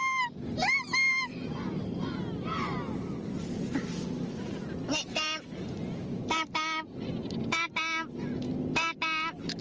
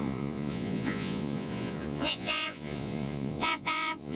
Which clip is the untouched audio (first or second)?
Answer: first